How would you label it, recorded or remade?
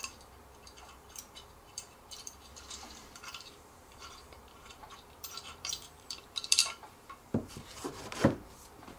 remade